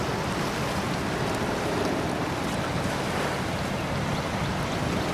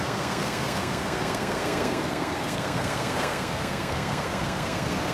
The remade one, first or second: second